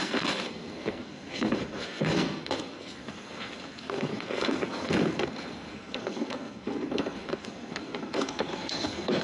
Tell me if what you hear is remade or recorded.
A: remade